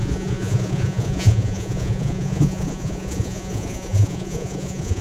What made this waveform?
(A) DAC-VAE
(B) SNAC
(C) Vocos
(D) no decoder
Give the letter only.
C